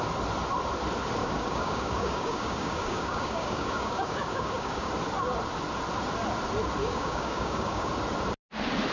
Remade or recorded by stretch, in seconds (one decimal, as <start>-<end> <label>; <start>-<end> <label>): 0.0-1.2 recorded; 1.2-4.9 remade; 4.9-6.8 recorded; 6.8-7.9 remade; 7.9-8.9 recorded